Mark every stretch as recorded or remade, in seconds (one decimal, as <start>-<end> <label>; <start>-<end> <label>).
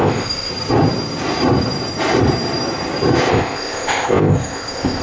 0.0-0.5 remade; 0.5-3.3 recorded; 3.3-5.0 remade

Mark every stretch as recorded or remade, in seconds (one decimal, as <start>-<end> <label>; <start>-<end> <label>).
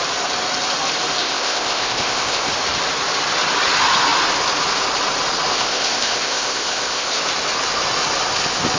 0.0-1.2 recorded; 1.2-2.5 remade; 2.5-5.5 recorded; 5.5-7.2 remade; 7.2-8.8 recorded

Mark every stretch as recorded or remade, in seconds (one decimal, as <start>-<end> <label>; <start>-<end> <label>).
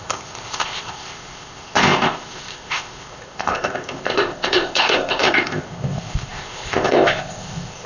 0.0-7.9 remade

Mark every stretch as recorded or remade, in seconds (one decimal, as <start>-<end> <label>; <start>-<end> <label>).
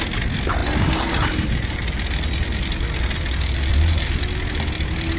0.0-5.2 recorded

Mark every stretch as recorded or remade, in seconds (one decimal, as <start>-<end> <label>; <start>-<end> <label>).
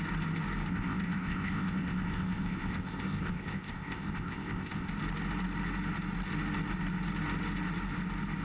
0.0-0.7 recorded; 0.7-4.9 remade; 4.9-8.4 recorded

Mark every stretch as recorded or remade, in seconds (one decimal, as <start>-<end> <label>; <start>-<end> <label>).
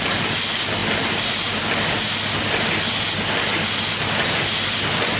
0.0-5.2 recorded